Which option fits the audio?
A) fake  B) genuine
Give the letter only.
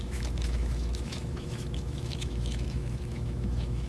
A